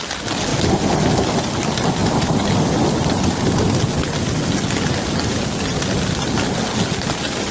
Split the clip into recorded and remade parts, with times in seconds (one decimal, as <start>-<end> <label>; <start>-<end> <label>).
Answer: 0.0-0.5 recorded; 0.5-1.1 remade; 1.1-2.0 recorded; 2.0-3.9 remade; 3.9-7.5 recorded